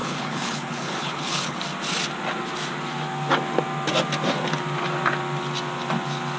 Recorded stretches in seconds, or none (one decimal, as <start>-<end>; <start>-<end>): 1.6-6.4